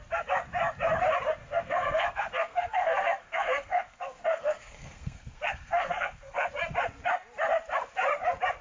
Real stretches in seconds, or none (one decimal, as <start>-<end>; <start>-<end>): 0.0-1.4; 6.5-8.6